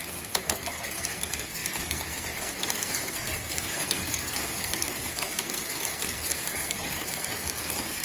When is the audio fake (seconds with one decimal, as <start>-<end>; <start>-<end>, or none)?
0.0-8.0